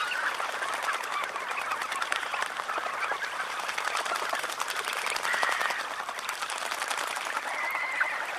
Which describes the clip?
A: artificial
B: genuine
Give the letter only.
B